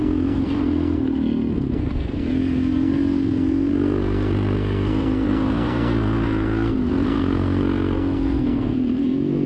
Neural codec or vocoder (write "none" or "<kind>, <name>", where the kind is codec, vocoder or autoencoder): codec, SNAC